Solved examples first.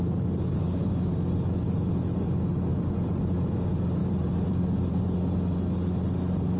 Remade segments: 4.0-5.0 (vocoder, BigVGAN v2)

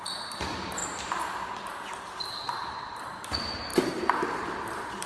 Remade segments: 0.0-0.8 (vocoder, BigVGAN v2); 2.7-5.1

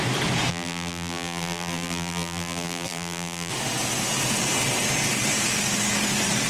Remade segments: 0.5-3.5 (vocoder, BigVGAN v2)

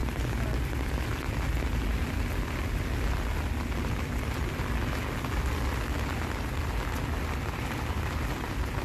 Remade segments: none

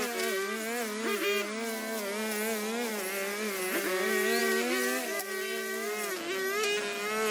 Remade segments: 2.9-4.4 (vocoder, BigVGAN v2)

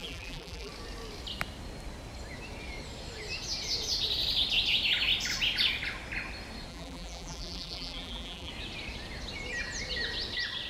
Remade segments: 0.0-0.7 (vocoder, BigVGAN v2); 6.7-8.5

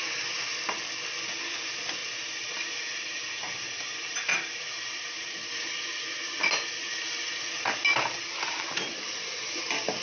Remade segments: 2.0-3.4 (vocoder, BigVGAN v2); 4.3-5.3; 7.9-9.6

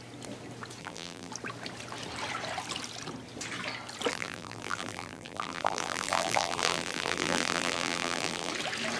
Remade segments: 0.8-1.3 (vocoder, BigVGAN v2); 4.1-8.5